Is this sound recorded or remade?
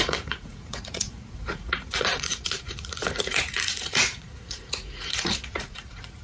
remade